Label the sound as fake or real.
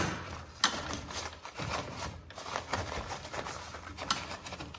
real